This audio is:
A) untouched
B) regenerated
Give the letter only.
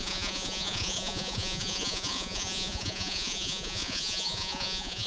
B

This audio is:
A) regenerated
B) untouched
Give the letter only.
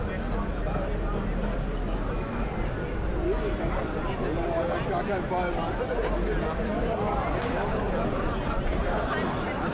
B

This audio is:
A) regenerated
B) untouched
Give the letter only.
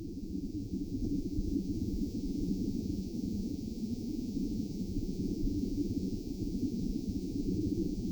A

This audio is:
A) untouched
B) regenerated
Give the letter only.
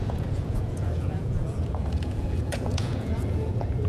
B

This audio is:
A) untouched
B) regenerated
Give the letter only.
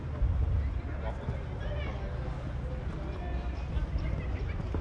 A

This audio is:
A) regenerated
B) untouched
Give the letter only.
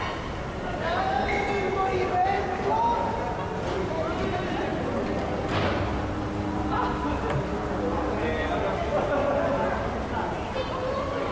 B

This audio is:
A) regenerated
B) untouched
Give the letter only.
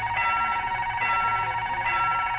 B